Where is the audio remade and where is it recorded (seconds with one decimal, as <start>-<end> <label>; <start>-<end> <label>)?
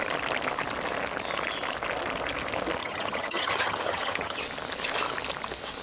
0.0-2.8 recorded; 2.8-4.4 remade; 4.4-5.8 recorded